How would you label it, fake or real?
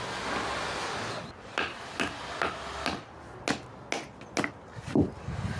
real